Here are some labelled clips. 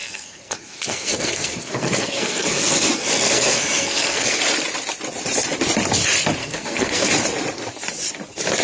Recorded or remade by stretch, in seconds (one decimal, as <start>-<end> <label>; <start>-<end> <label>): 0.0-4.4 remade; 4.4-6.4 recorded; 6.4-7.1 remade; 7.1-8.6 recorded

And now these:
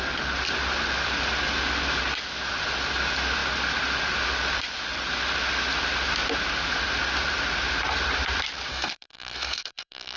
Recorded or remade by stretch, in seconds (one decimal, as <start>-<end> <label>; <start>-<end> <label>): 0.0-8.7 recorded; 8.7-10.2 remade

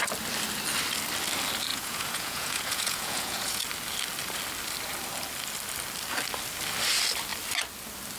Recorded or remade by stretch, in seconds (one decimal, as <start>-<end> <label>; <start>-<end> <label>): 0.0-1.7 recorded; 1.7-3.6 remade; 3.6-8.2 recorded